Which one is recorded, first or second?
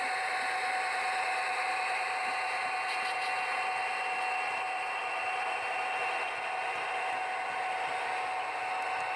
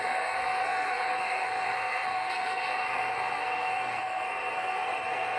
first